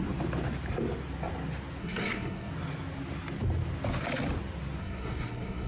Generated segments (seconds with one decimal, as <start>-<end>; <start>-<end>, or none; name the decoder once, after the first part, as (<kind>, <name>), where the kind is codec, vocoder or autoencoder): 1.8-2.5 (codec, SNAC); 4.8-5.7